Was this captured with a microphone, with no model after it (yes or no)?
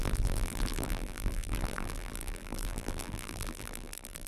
no